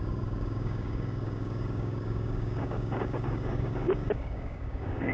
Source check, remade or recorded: remade